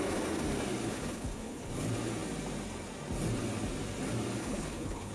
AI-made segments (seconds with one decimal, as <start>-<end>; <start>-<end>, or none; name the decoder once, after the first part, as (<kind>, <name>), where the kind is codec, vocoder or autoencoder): 0.9-1.7 (codec, HILCodec); 4.4-5.1

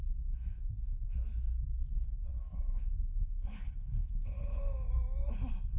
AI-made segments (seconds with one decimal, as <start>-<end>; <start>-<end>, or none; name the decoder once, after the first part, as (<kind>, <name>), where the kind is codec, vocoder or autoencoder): 2.3-4.6 (codec, HILCodec)

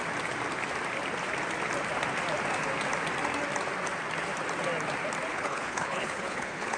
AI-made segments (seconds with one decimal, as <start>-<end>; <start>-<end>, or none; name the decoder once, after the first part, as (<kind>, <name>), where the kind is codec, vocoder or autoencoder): 5.3-6.8 (codec, HILCodec)

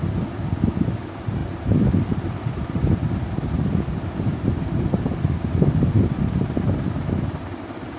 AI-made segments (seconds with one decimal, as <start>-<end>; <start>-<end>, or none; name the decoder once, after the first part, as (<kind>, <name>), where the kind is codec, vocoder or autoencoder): none

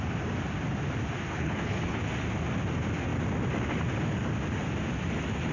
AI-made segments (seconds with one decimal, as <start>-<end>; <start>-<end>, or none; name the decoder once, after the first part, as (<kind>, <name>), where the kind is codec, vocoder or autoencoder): 1.3-2.0 (codec, HILCodec)

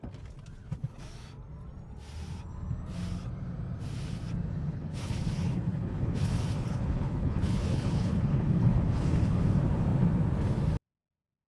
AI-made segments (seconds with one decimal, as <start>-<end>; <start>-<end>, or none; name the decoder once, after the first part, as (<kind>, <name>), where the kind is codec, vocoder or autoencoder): 4.7-9.4 (codec, HILCodec)

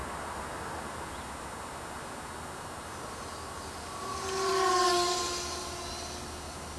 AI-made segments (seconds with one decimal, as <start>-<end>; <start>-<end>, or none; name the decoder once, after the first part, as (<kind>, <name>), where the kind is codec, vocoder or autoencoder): none